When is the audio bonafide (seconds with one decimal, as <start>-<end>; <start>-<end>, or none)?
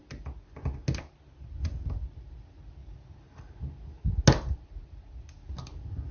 0.0-2.8; 3.4-6.1